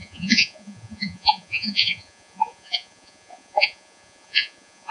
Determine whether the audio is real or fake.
fake